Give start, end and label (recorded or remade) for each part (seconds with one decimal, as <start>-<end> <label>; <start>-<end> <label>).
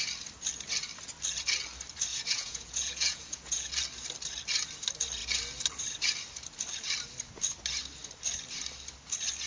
0.0-2.1 recorded; 2.1-3.7 remade; 3.7-9.5 recorded